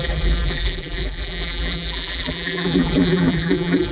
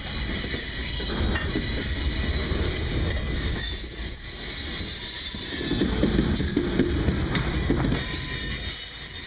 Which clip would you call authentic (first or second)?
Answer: second